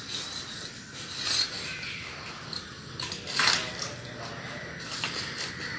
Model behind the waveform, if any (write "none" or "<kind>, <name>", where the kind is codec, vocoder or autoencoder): none